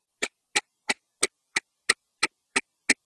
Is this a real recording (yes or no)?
yes